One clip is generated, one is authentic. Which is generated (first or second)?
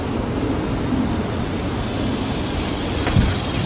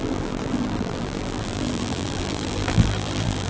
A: second